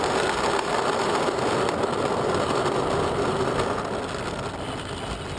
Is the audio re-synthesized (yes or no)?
no